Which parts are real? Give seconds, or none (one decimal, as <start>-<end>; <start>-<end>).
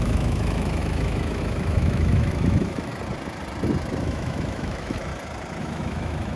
2.9-4.0; 5.1-5.6